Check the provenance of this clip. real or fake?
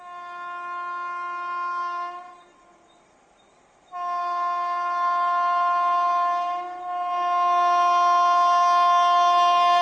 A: real